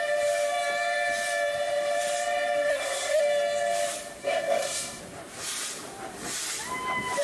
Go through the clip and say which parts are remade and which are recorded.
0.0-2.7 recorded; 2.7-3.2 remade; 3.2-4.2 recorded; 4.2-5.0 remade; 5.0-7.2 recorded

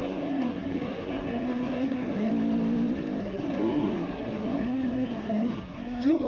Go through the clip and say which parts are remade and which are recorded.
0.0-2.3 remade; 2.3-3.2 recorded; 3.2-6.3 remade

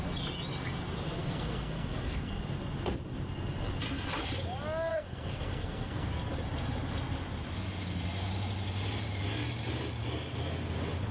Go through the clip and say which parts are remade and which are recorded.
0.0-1.2 recorded; 1.2-2.4 remade; 2.4-4.9 recorded; 4.9-6.1 remade; 6.1-11.1 recorded